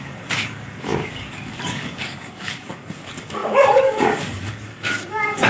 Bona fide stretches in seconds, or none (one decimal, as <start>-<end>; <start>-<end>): none